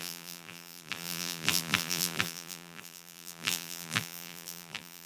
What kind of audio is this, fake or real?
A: fake